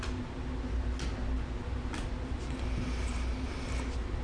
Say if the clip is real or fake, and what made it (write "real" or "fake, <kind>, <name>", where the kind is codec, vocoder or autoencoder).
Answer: real